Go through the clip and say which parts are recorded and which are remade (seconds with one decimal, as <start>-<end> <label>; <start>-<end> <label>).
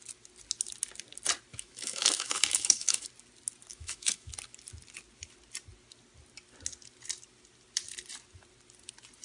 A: 0.0-1.5 recorded; 1.5-3.1 remade; 3.1-3.7 recorded; 3.7-4.3 remade; 4.3-9.2 recorded